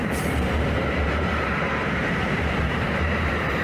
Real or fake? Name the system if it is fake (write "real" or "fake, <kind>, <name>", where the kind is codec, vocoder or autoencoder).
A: fake, vocoder, BigVGAN v2